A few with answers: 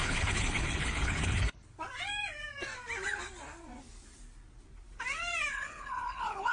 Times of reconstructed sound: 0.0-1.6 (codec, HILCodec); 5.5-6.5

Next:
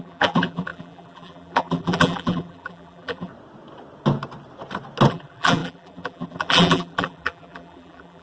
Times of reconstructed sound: 0.0-3.3 (vocoder, BigVGAN v2); 5.1-8.2

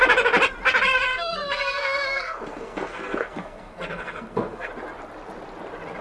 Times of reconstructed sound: 1.1-4.7 (codec, SNAC)

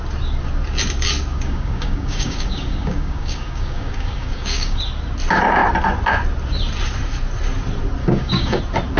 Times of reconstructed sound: 1.3-4.8 (codec, DAC); 8.0-8.6